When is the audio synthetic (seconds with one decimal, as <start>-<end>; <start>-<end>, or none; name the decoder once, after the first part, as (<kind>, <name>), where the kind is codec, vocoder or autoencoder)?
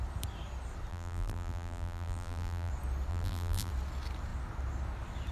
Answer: 0.9-2.7 (vocoder, BigVGAN v2); 3.1-3.7